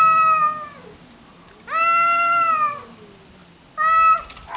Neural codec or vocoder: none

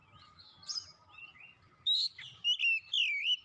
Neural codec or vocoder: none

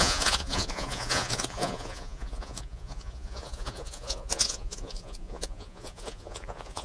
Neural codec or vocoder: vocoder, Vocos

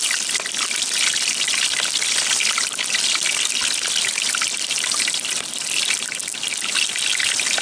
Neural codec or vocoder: none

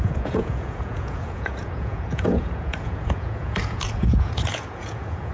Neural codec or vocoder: vocoder, Vocos